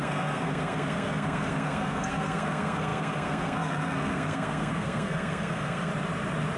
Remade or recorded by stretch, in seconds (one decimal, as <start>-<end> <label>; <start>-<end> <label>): 0.0-5.9 remade; 5.9-6.6 recorded